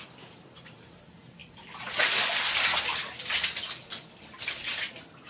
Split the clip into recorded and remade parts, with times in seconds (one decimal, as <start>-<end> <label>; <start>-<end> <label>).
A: 0.0-5.3 recorded